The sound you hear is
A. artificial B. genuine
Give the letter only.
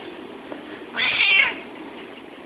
B